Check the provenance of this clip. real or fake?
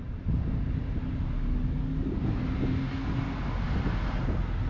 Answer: real